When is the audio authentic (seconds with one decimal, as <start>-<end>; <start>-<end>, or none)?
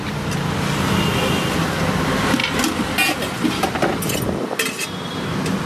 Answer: 0.0-5.7